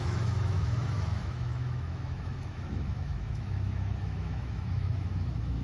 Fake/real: fake